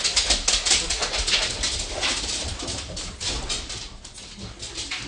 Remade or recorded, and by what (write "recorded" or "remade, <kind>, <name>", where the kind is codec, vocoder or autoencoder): recorded